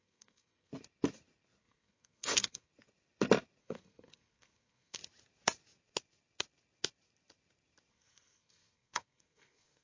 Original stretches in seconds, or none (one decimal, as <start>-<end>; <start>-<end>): 0.7-1.6; 2.7-3.6; 5.0-7.9